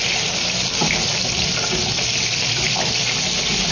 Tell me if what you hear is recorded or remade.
recorded